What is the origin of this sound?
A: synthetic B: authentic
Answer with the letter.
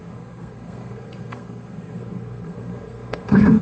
A